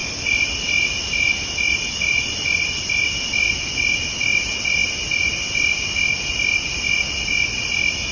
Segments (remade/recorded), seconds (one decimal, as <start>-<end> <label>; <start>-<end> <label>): 0.0-8.1 recorded